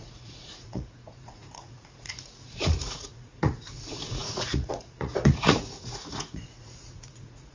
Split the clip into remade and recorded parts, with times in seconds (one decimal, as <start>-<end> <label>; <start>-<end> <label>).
0.0-7.5 remade